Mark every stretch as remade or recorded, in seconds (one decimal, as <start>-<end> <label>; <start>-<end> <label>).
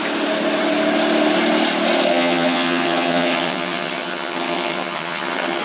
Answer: 0.0-2.1 recorded; 2.1-5.6 remade